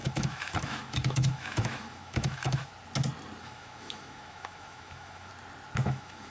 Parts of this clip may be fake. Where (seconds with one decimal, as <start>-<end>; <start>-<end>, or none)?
0.0-2.7; 3.4-5.3; 5.8-6.3